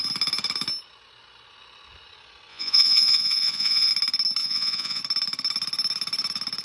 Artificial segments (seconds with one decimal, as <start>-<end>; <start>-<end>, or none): 2.5-3.9; 4.4-5.0